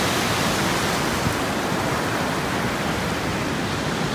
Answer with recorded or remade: recorded